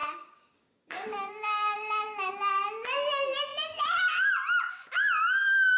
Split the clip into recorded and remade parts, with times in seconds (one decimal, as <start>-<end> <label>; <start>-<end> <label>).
0.0-2.3 remade; 2.3-5.8 recorded